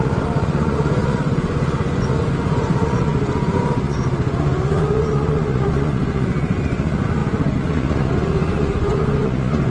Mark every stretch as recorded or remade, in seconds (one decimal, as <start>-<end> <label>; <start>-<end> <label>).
0.0-9.7 remade